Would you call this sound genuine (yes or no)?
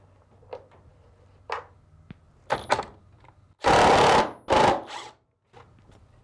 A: yes